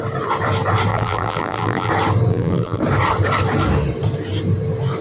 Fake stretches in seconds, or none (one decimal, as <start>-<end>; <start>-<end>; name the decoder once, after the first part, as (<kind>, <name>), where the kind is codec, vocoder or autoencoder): 0.9-1.9 (vocoder, BigVGAN v2); 2.3-2.8